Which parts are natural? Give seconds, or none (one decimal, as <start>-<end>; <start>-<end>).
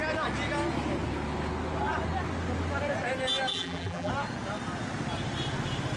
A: 0.0-3.5; 4.1-6.0